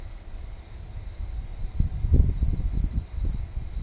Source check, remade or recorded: recorded